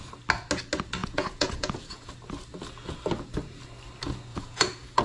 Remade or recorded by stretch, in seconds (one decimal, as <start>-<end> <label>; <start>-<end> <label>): 0.0-1.0 recorded; 1.0-2.1 remade; 2.1-4.3 recorded; 4.3-5.0 remade